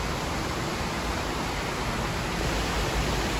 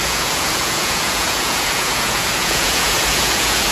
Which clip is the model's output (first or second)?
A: second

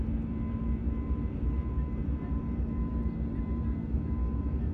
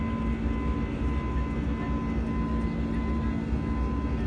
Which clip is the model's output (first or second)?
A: first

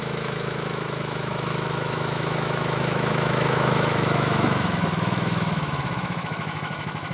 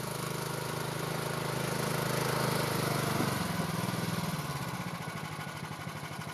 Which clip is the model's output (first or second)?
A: first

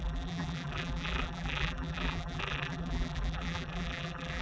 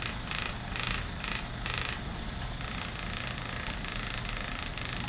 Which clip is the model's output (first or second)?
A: first